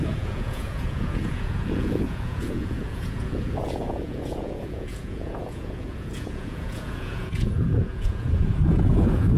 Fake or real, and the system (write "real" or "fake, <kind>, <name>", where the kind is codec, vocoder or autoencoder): fake, vocoder, Vocos